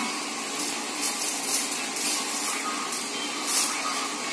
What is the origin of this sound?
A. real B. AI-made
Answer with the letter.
A